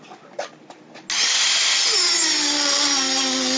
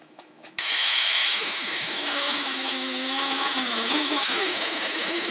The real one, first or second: first